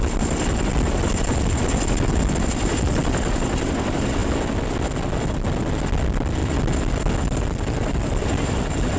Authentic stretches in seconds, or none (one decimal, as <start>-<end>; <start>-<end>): 4.2-5.7; 6.4-7.4